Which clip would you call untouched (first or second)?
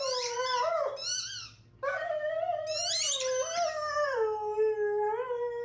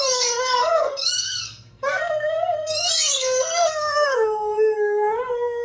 first